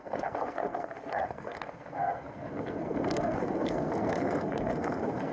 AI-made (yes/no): yes